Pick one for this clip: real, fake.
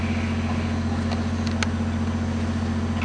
real